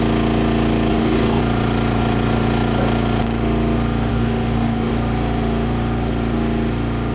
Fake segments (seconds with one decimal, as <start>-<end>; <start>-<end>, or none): 0.9-1.4; 4.1-4.9